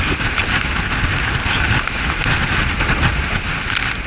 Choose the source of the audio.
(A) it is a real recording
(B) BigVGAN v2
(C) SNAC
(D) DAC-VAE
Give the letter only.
A